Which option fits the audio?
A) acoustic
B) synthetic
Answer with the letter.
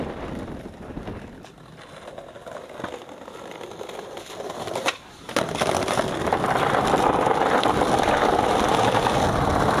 A